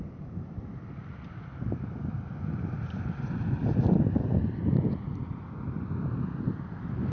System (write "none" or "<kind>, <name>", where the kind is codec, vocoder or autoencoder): vocoder, BigVGAN v2